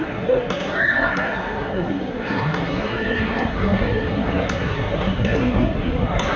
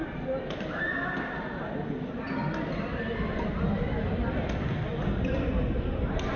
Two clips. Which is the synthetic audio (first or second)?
first